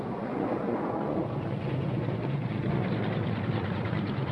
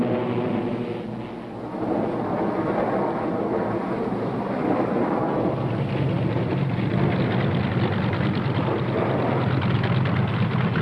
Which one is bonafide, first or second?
second